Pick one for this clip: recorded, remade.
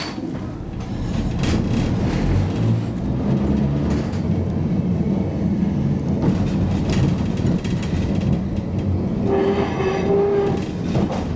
recorded